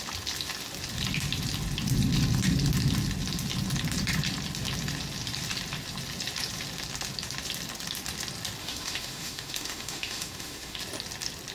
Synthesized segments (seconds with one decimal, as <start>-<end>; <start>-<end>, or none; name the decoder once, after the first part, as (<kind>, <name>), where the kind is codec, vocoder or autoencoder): 8.6-10.8 (autoencoder, DAC-VAE)